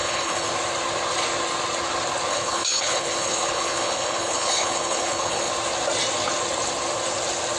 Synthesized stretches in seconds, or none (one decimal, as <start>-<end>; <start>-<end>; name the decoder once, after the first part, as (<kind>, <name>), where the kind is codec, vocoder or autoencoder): 0.0-0.5 (codec, HILCodec); 2.3-5.5